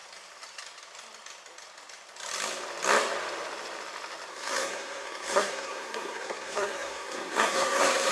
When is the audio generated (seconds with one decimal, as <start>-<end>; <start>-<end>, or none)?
4.3-8.1